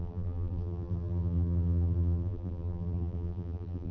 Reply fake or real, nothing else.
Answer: fake